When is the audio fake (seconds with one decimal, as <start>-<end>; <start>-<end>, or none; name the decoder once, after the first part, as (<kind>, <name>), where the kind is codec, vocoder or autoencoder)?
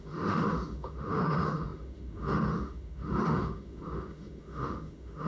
0.0-5.3 (autoencoder, DAC-VAE)